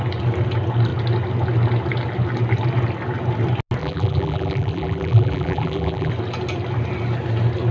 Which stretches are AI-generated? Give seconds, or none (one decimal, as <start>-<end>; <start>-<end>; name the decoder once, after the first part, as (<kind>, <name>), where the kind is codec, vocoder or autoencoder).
3.8-6.1 (vocoder, BigVGAN v2)

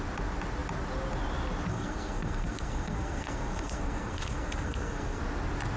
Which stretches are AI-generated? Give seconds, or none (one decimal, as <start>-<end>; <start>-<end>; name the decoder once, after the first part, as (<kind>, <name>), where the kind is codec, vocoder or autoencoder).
1.7-5.2 (codec, SNAC)